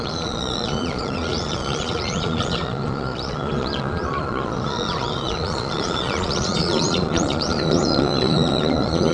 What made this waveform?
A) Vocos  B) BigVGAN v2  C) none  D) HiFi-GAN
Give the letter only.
A